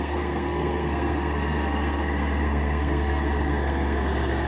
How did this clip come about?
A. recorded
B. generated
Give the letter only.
B